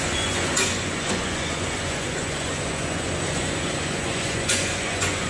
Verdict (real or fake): fake